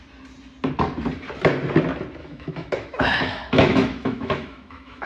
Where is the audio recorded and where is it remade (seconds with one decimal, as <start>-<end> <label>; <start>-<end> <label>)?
0.0-2.2 recorded; 2.2-5.1 remade